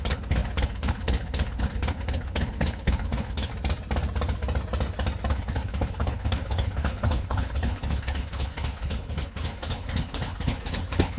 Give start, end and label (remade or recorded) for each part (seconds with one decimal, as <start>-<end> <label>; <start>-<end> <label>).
0.0-3.5 remade; 3.5-5.3 recorded; 5.3-11.2 remade